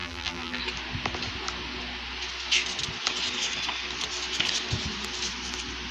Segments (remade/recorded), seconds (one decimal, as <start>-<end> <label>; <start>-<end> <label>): 0.0-0.6 remade; 0.6-5.9 recorded